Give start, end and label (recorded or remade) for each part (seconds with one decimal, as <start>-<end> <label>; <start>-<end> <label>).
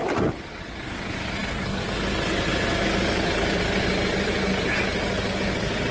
0.0-0.6 remade; 0.6-5.9 recorded